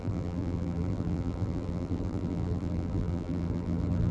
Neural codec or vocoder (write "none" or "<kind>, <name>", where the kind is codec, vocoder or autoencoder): vocoder, BigVGAN v2